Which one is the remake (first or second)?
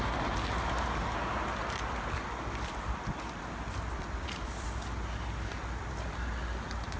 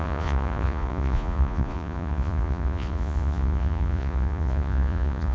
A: second